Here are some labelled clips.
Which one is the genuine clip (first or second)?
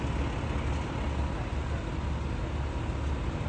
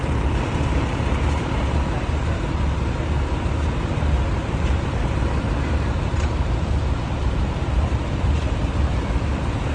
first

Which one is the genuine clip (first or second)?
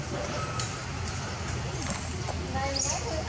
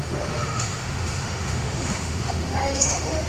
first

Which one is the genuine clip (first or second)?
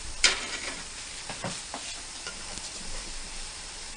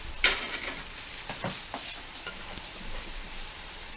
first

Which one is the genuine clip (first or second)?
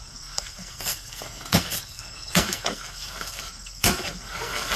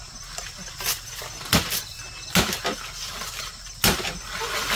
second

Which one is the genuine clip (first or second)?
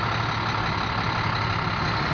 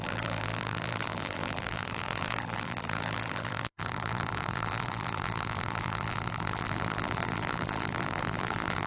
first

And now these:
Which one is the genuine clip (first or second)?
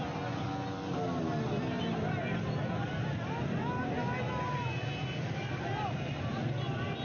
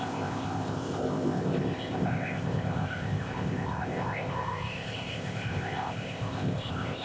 first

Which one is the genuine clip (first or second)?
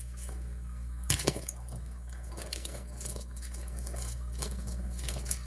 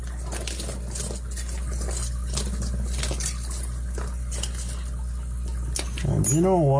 second